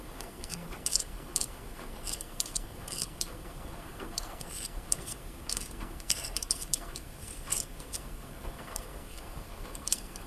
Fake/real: fake